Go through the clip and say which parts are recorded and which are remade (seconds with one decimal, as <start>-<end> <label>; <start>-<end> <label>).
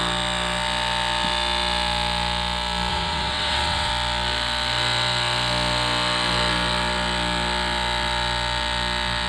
0.0-2.9 recorded; 2.9-3.9 remade; 3.9-9.3 recorded